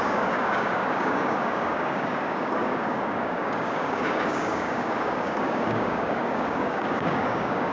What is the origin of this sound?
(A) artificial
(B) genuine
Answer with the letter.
A